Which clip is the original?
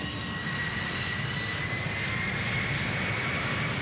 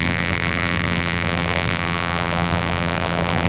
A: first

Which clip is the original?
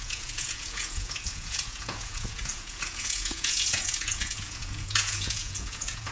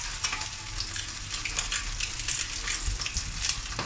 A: second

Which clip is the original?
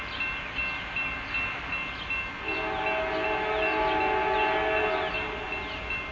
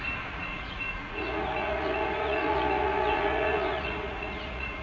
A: first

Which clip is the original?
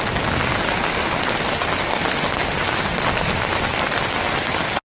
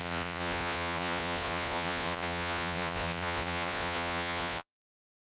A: first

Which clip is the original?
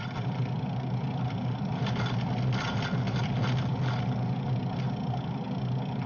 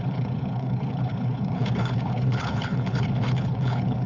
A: first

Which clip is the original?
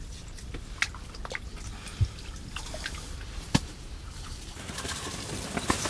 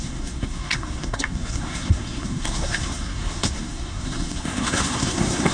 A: first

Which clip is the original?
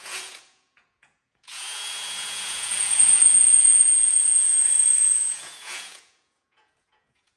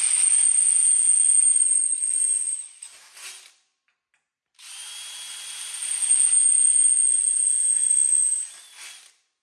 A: second